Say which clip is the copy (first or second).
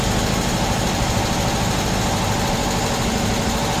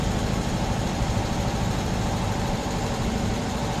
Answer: second